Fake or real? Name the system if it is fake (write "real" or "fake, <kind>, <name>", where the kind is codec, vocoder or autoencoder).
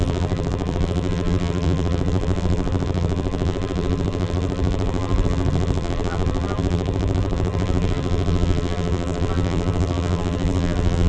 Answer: fake, vocoder, BigVGAN v2